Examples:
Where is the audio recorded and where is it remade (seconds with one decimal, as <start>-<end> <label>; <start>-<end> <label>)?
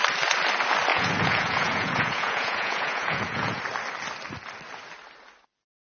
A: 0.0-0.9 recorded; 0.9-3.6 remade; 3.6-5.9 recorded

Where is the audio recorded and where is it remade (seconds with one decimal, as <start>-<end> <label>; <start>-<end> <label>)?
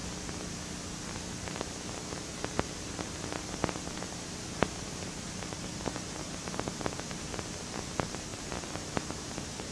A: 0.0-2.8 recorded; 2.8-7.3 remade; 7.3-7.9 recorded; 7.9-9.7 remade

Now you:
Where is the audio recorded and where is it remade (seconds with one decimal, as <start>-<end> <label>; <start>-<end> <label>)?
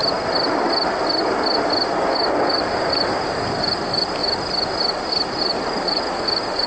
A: 0.0-2.3 recorded; 2.3-4.2 remade; 4.2-5.3 recorded; 5.3-6.7 remade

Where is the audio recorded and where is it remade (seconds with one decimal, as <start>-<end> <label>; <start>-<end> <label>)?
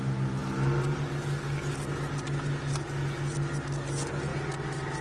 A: 0.0-5.0 recorded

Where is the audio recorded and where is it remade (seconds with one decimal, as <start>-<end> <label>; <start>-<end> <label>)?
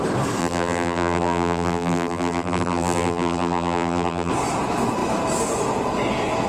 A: 0.0-0.4 recorded; 0.4-4.3 remade; 4.3-6.5 recorded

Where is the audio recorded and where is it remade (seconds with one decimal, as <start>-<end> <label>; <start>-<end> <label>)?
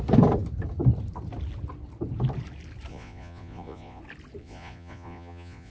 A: 0.0-2.9 recorded; 2.9-4.0 remade; 4.0-4.4 recorded; 4.4-5.7 remade